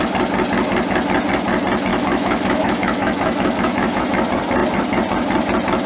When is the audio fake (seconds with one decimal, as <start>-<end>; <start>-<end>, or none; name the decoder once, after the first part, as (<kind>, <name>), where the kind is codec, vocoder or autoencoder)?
1.9-4.0 (autoencoder, DAC-VAE)